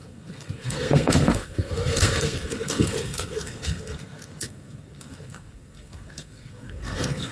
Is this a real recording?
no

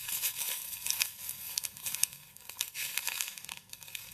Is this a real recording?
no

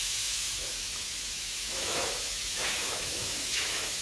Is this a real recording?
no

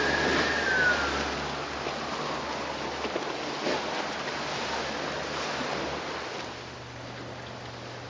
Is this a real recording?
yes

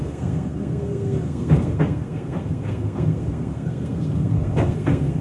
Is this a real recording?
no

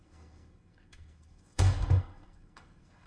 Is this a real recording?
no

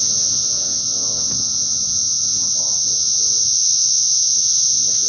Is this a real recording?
no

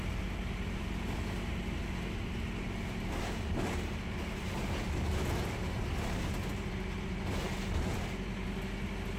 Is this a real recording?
yes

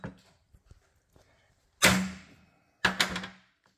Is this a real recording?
yes